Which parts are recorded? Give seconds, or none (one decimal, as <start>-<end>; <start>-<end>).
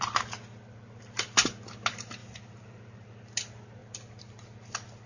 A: 0.0-2.2; 3.1-5.1